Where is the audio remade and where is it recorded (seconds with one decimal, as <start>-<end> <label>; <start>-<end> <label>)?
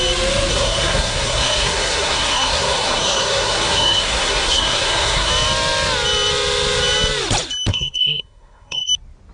0.0-0.5 recorded; 0.5-5.3 remade; 5.3-7.7 recorded; 7.7-8.9 remade; 8.9-9.3 recorded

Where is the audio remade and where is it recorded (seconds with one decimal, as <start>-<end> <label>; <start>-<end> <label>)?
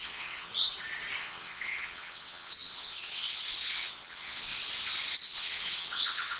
0.0-0.5 remade; 0.5-1.2 recorded; 1.2-4.5 remade; 4.5-5.2 recorded; 5.2-6.4 remade